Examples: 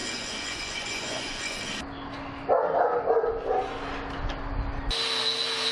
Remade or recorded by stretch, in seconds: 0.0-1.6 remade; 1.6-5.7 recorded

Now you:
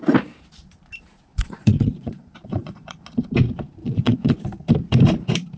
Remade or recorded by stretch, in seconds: 0.0-1.3 recorded; 1.3-3.0 remade; 3.0-3.8 recorded; 3.8-4.3 remade; 4.3-5.6 recorded